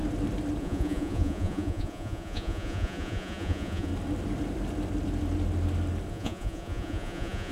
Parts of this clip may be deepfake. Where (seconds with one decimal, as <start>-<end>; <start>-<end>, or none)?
0.6-3.9; 6.1-7.5